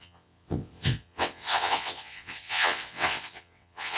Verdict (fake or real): fake